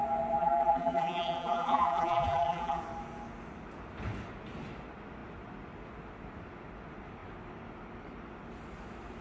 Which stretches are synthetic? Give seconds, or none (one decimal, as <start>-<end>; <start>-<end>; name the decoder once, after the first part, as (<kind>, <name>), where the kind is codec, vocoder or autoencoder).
0.4-2.8 (vocoder, BigVGAN v2)